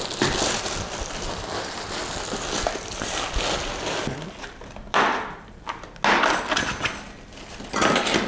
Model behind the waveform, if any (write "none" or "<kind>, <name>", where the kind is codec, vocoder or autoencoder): none